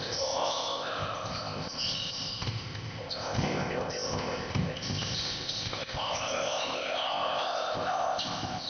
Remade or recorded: remade